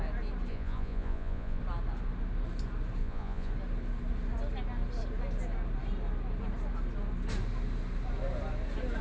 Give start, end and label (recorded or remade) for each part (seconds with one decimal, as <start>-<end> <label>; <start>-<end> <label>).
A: 0.0-0.5 recorded; 0.5-1.6 remade; 1.6-3.0 recorded; 3.0-3.5 remade; 3.5-9.0 recorded